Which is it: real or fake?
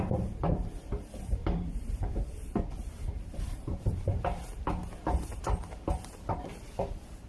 fake